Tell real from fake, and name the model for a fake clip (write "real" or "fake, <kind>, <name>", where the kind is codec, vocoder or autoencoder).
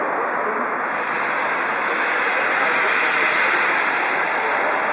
real